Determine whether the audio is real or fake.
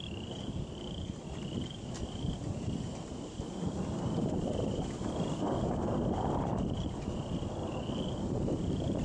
real